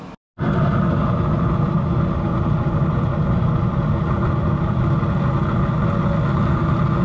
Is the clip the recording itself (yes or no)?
yes